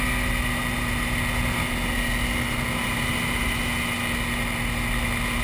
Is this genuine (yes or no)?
yes